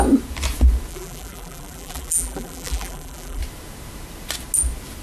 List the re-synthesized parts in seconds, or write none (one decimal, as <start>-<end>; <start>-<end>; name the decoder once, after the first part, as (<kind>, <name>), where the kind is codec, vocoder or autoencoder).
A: 0.9-3.4 (vocoder, BigVGAN v2)